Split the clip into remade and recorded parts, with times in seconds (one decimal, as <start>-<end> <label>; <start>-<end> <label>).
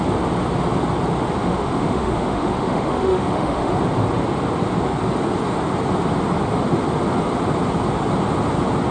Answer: 0.0-1.4 recorded; 1.4-3.7 remade; 3.7-8.9 recorded